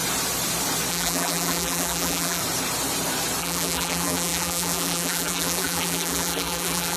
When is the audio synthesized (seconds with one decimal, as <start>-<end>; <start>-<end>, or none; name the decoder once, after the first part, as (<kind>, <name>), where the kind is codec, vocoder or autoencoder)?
0.9-2.4 (vocoder, BigVGAN v2); 3.4-7.0